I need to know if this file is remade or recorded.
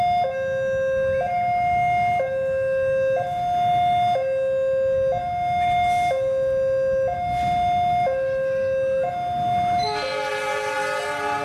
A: recorded